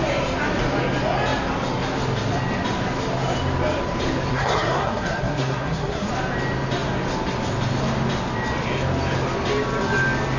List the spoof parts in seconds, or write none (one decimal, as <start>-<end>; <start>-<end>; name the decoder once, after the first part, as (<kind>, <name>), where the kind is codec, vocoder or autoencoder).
4.3-6.1 (codec, SNAC)